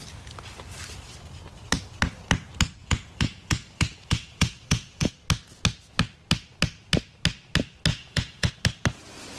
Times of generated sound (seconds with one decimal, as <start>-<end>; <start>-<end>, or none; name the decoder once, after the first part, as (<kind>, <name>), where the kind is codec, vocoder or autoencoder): 2.8-5.1 (vocoder, Vocos); 7.9-8.5